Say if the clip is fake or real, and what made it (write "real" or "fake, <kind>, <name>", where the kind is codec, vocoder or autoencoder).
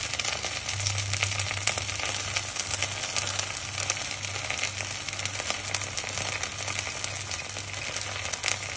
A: real